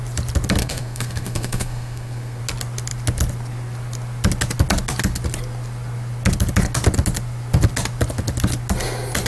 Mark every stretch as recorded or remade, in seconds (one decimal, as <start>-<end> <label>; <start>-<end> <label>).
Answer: 0.0-0.6 recorded; 0.6-2.4 remade; 2.4-9.3 recorded